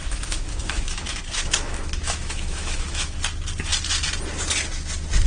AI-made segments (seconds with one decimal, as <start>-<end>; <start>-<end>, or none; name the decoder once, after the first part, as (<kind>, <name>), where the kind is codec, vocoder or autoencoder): 0.0-3.2 (autoencoder, DAC-VAE)